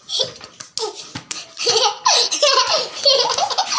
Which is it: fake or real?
real